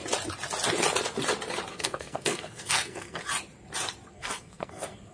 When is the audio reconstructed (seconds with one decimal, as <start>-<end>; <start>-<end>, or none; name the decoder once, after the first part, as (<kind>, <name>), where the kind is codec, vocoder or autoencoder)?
1.7-3.2 (codec, SNAC); 4.1-5.1

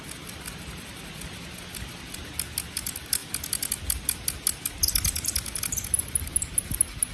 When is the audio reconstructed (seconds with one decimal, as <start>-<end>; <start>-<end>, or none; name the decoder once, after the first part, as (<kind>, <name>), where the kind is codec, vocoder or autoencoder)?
none

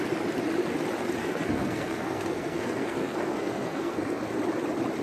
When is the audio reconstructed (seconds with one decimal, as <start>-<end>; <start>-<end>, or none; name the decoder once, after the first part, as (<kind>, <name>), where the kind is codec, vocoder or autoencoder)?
1.2-4.2 (codec, SNAC)

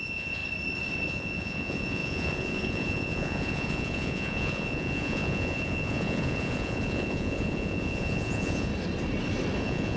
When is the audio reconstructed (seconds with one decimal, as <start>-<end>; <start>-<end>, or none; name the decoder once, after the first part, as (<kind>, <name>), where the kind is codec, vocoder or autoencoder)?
0.0-0.4 (vocoder, Vocos); 1.1-8.7; 9.6-10.0

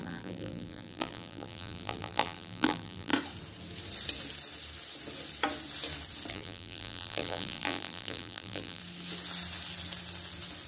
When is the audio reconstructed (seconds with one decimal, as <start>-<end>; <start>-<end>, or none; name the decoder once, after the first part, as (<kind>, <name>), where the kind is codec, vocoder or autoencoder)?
0.0-3.1 (vocoder, BigVGAN v2); 6.3-8.8

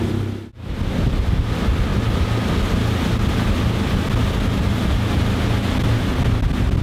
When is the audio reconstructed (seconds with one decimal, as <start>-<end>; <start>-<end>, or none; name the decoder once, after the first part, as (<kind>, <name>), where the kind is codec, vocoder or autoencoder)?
none

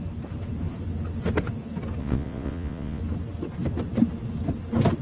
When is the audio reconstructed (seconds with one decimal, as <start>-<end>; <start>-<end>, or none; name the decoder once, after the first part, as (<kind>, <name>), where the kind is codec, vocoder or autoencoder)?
2.0-3.0 (vocoder, Vocos)

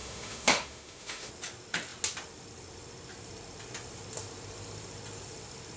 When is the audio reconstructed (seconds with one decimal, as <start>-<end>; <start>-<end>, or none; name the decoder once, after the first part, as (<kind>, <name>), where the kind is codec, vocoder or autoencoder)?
0.0-1.3 (autoencoder, DAC-VAE)